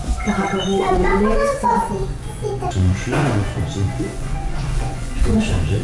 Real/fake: fake